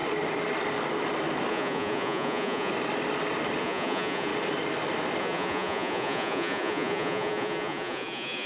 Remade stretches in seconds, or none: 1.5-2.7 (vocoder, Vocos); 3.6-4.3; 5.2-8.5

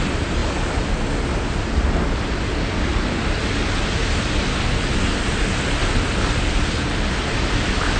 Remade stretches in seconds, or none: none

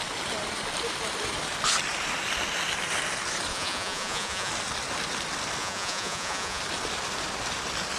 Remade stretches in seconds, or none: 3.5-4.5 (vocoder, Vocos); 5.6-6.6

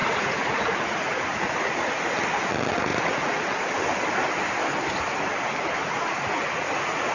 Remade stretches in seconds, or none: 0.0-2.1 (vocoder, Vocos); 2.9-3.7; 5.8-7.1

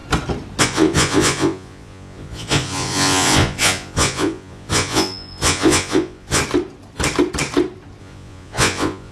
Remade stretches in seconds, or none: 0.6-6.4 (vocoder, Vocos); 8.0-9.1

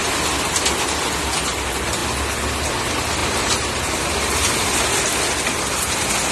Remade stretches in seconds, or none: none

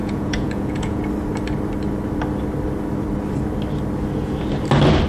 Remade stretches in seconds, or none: 0.0-1.0 (vocoder, Vocos)

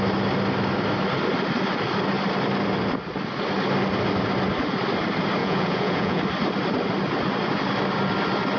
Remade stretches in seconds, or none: 5.4-6.2 (vocoder, Vocos)